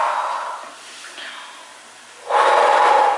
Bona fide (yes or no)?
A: yes